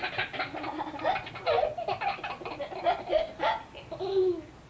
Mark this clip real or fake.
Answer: real